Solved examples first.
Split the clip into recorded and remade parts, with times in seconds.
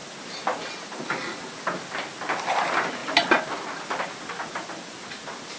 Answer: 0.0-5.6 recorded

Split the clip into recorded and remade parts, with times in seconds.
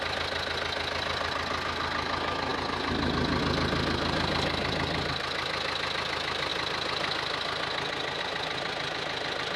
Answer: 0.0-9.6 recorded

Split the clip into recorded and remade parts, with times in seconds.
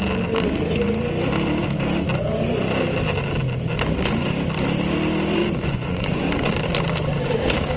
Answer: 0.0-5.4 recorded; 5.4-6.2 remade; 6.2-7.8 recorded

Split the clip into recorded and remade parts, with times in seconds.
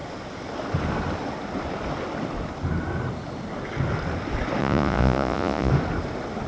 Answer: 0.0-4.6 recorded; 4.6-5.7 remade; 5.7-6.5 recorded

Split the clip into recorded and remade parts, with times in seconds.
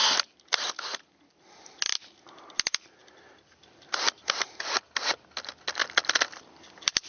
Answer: 0.0-7.1 recorded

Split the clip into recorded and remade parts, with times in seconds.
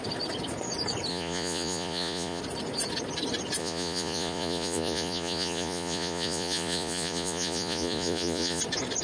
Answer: 0.0-1.1 recorded; 1.1-2.4 remade; 2.4-3.6 recorded; 3.6-8.6 remade; 8.6-9.0 recorded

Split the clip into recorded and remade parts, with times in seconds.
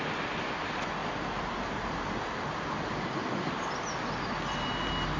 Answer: 0.0-5.2 recorded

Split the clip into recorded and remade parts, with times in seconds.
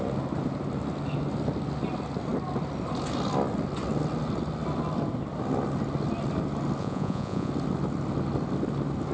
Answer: 0.0-6.8 recorded; 6.8-7.5 remade; 7.5-9.1 recorded